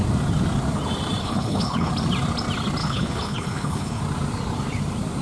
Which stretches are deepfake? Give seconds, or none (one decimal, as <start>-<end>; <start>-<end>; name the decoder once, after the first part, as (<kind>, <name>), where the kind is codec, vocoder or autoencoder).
1.2-1.9 (codec, HILCodec); 2.8-4.0